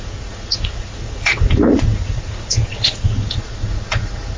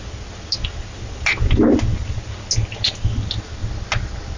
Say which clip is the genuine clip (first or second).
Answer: second